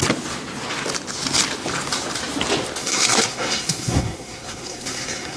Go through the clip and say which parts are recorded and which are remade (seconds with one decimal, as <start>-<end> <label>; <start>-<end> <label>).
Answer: 0.0-2.8 recorded; 2.8-5.4 remade

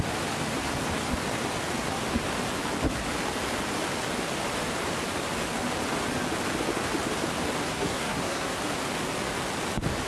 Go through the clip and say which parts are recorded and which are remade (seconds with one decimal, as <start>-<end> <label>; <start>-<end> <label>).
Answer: 0.0-7.7 recorded; 7.7-8.6 remade; 8.6-10.1 recorded